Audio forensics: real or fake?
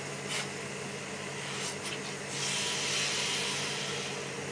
real